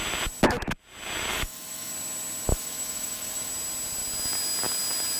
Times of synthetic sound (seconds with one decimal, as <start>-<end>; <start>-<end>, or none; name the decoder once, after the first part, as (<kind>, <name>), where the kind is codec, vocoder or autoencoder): 1.3-1.9 (autoencoder, DAC-VAE); 2.5-3.5